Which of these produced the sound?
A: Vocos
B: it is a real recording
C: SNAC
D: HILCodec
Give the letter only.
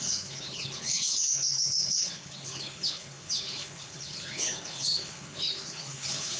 D